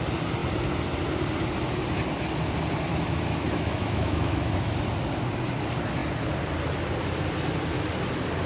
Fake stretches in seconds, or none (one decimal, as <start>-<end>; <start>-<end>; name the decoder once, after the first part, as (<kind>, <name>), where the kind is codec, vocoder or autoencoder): 2.9-4.8 (autoencoder, DAC-VAE)